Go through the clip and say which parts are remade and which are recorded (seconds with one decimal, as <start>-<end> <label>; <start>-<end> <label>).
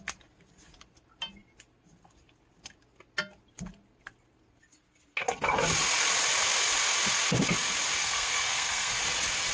0.0-8.0 recorded; 8.0-9.0 remade; 9.0-9.5 recorded